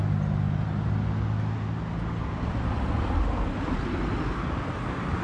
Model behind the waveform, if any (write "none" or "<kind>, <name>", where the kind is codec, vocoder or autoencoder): none